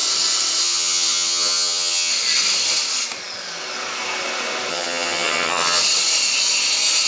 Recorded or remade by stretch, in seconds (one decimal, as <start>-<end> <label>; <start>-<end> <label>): 0.0-0.6 recorded; 0.6-2.1 remade; 2.1-4.7 recorded; 4.7-5.8 remade; 5.8-7.1 recorded